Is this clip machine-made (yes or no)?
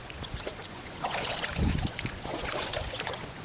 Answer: yes